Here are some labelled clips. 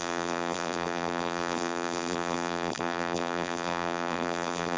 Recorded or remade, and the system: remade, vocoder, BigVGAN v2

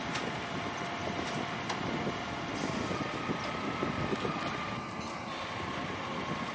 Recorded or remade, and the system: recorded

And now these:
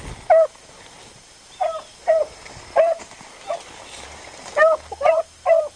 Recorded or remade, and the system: recorded